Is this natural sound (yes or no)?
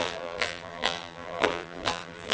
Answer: no